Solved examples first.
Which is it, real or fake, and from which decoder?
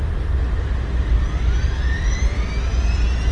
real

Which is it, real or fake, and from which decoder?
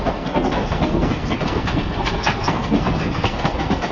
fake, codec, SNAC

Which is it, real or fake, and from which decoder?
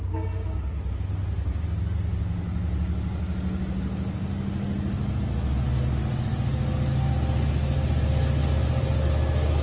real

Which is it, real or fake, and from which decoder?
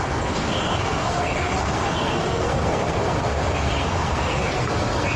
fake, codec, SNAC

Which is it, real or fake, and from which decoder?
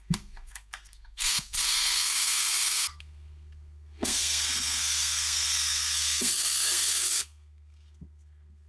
fake, codec, SNAC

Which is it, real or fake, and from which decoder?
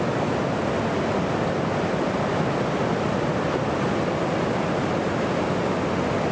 real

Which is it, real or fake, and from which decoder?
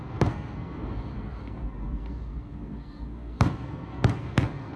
fake, codec, SNAC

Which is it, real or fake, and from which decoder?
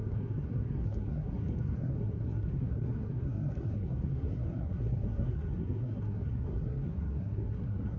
fake, codec, SNAC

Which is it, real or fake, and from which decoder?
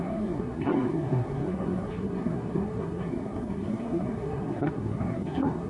fake, codec, SNAC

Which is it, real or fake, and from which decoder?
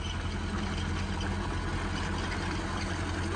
real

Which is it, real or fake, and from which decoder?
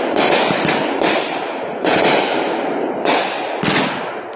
real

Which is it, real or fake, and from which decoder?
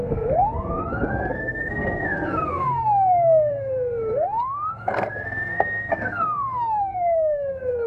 fake, codec, SNAC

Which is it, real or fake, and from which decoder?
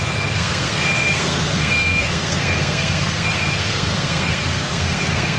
fake, codec, SNAC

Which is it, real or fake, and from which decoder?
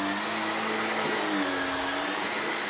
real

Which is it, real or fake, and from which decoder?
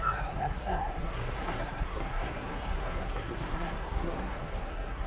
fake, codec, SNAC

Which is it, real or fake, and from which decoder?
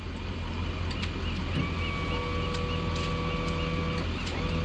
real